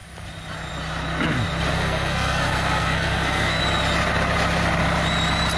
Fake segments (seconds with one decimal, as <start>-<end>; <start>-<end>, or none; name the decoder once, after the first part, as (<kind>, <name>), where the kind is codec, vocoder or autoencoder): 1.7-3.6 (codec, SNAC)